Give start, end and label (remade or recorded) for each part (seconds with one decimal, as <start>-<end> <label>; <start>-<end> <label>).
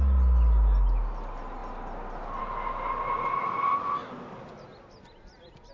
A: 0.0-5.7 recorded